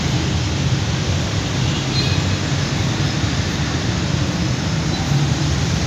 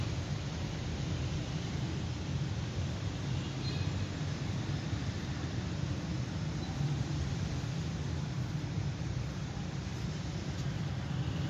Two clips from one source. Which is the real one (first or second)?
first